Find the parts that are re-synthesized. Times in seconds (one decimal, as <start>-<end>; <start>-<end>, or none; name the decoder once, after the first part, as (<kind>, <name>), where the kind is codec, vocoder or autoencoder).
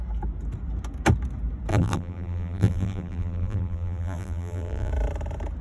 1.7-4.9 (vocoder, BigVGAN v2)